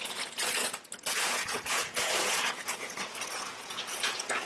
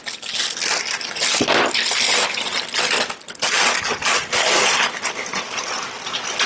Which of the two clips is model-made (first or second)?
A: first